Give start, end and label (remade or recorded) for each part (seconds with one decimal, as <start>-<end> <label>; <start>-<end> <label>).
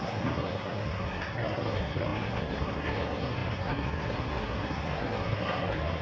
0.0-6.0 remade